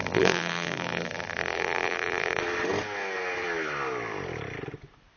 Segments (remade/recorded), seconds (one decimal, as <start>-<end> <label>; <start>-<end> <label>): 0.0-2.4 remade; 2.4-5.2 recorded